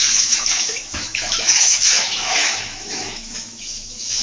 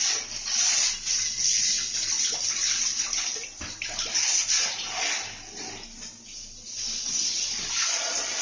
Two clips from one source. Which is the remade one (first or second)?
first